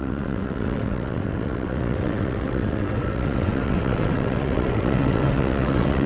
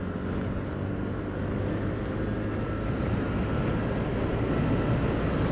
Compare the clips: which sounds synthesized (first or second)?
first